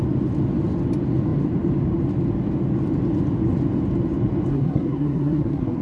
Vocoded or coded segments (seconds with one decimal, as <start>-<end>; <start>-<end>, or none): 4.5-5.8